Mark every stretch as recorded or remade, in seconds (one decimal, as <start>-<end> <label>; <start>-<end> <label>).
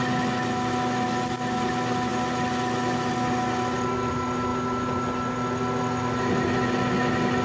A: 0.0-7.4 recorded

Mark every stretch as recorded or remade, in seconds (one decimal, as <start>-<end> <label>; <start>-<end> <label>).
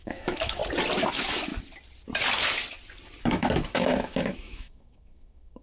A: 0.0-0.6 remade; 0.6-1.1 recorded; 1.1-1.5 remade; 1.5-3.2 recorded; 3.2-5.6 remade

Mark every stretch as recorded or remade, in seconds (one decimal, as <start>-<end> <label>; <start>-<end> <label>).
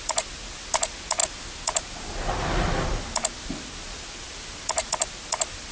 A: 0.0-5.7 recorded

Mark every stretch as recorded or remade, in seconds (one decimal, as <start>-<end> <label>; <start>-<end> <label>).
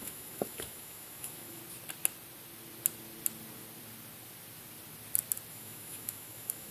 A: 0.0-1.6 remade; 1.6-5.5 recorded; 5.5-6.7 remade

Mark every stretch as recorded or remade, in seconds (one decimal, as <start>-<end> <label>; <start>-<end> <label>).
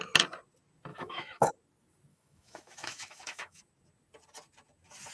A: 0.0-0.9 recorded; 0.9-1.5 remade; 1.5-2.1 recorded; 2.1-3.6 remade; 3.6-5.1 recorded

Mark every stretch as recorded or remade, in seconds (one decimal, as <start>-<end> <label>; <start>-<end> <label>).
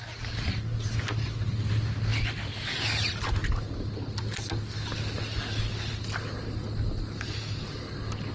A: 0.0-8.3 recorded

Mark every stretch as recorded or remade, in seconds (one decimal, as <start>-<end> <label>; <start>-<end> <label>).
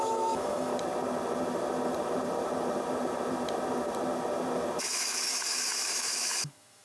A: 0.0-0.7 remade; 0.7-4.8 recorded; 4.8-6.8 remade